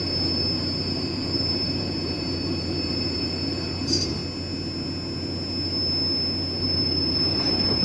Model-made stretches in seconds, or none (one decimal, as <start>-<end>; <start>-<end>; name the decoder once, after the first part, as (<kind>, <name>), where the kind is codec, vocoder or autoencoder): 0.0-4.2 (vocoder, BigVGAN v2); 6.6-7.8

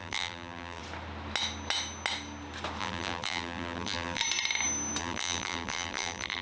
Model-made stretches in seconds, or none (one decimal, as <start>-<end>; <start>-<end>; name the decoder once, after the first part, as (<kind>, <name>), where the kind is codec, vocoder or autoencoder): 0.0-0.8 (vocoder, BigVGAN v2); 2.8-4.2; 5.0-6.4

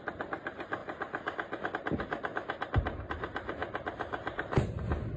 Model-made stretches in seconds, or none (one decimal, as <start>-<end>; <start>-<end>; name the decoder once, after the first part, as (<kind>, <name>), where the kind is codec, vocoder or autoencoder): none

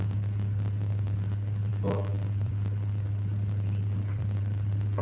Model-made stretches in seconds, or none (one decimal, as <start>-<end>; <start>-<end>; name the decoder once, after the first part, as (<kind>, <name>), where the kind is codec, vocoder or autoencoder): 1.7-5.0 (vocoder, BigVGAN v2)

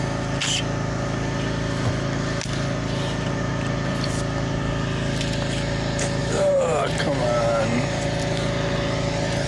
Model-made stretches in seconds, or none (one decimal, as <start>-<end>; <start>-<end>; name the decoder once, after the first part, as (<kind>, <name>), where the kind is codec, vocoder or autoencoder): 6.2-7.0 (vocoder, BigVGAN v2)

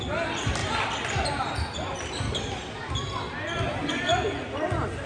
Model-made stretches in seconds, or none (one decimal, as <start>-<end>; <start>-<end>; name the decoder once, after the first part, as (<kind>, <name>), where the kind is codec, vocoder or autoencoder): none

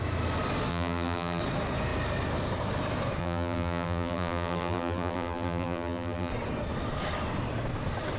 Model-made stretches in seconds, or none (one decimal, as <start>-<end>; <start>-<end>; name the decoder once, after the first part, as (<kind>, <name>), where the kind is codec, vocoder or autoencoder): 0.7-1.4 (vocoder, BigVGAN v2); 3.2-6.3